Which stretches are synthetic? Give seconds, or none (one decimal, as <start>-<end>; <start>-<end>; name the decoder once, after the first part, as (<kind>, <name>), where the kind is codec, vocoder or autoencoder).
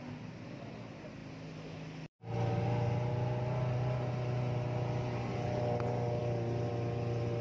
none